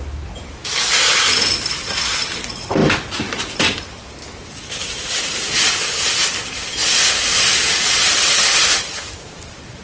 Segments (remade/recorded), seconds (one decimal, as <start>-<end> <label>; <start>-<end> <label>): 0.0-9.8 recorded